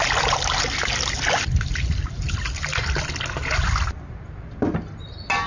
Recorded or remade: recorded